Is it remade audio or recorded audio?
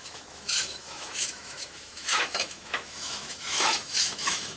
remade